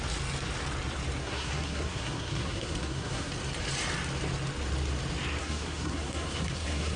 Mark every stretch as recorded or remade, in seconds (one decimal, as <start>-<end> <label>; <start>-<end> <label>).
0.0-1.2 recorded; 1.2-3.3 remade; 3.3-5.4 recorded; 5.4-7.0 remade